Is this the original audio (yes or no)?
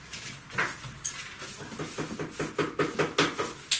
yes